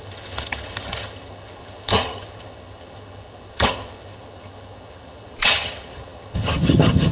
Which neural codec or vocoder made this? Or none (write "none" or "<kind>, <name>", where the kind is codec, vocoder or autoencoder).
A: vocoder, HiFi-GAN